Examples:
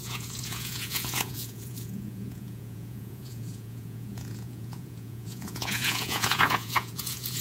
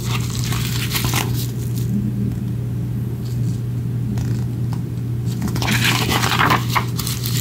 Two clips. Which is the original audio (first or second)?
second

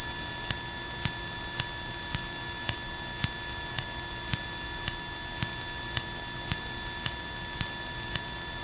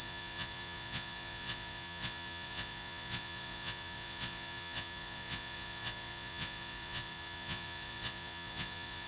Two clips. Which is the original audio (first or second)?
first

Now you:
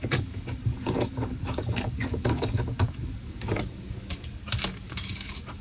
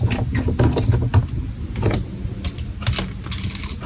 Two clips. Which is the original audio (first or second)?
second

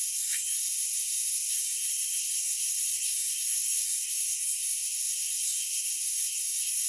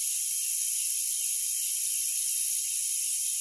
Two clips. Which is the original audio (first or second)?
second